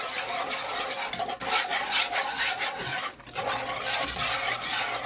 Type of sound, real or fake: real